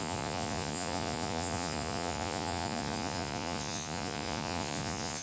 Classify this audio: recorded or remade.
remade